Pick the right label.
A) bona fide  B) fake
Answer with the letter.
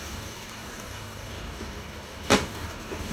B